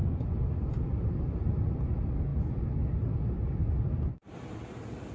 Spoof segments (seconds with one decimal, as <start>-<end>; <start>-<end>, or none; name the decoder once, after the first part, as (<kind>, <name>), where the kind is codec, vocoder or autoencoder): none